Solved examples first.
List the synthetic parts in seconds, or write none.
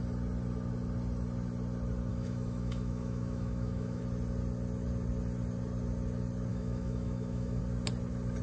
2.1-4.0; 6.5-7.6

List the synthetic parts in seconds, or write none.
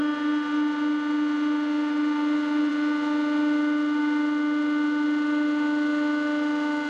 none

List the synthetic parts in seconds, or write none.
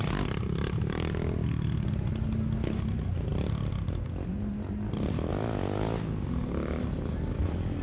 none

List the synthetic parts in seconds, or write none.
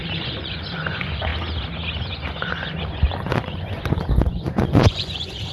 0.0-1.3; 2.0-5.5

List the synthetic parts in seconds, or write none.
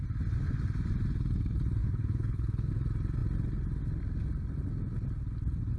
1.8-2.7